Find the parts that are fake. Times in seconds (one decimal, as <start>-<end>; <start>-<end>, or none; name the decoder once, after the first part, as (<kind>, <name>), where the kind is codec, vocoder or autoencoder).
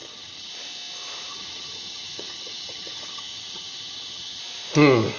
0.0-0.5 (vocoder, HiFi-GAN); 1.3-4.4